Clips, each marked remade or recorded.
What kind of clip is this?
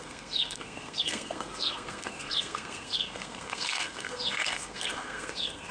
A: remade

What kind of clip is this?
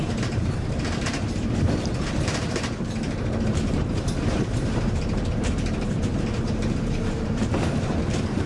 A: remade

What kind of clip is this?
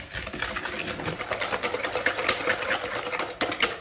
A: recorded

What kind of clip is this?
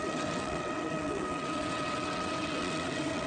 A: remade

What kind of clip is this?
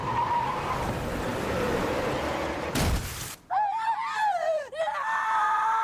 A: remade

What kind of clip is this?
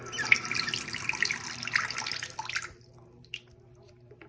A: recorded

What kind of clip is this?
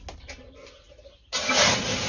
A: recorded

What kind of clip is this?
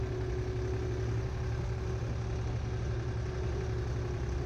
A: recorded